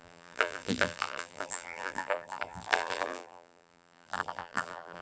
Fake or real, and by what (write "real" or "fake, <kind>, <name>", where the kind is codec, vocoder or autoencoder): fake, vocoder, BigVGAN v2